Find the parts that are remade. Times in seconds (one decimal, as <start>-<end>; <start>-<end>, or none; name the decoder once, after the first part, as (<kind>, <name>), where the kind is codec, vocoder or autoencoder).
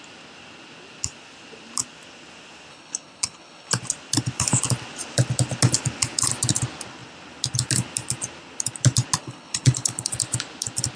2.7-3.7 (codec, HILCodec); 9.2-10.1